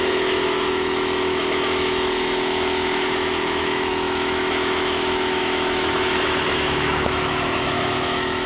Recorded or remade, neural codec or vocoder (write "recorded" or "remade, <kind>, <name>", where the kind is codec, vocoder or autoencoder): remade, autoencoder, DAC-VAE